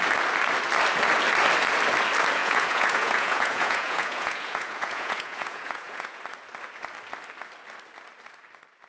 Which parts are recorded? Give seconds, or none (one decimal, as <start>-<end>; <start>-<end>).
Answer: 0.0-2.4; 6.2-8.9